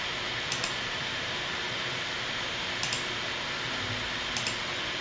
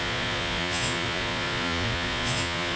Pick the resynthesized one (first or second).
second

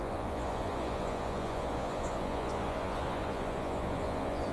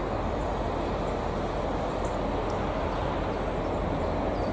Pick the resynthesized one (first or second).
first